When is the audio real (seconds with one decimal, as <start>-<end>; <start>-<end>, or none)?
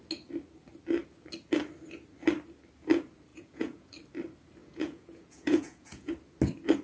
0.0-3.3; 3.9-4.6; 6.1-6.8